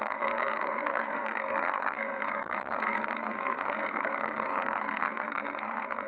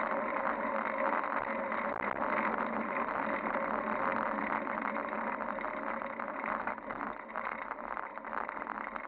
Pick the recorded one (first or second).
second